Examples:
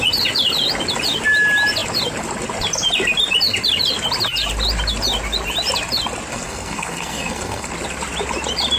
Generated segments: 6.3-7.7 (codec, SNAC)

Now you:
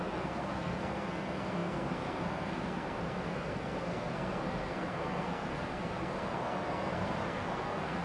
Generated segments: 0.0-8.0 (codec, SNAC)

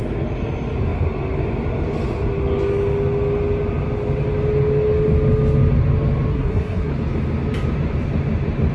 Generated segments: 6.3-6.9 (codec, SNAC)

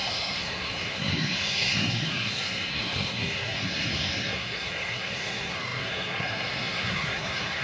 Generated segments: 0.0-7.6 (codec, SNAC)

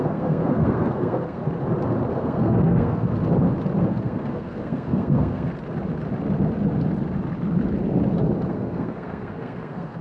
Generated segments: 0.0-1.4 (codec, SNAC); 2.1-3.1; 3.8-5.5; 8.5-10.0

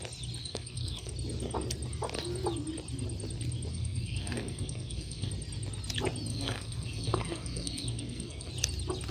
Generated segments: 0.4-1.1 (codec, SNAC); 3.7-5.3; 6.3-8.5

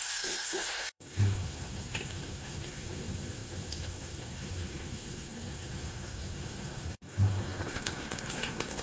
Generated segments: 0.0-8.8 (codec, SNAC)